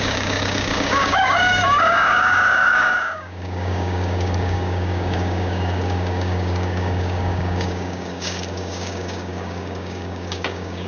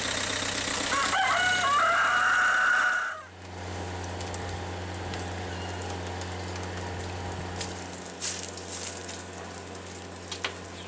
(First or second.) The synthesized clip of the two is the first